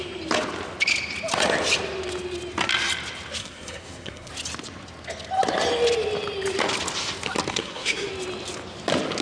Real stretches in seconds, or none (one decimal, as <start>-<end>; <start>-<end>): 0.0-3.4; 4.3-7.5; 8.1-9.2